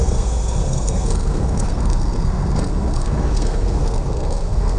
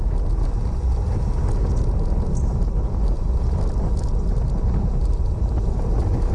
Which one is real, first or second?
second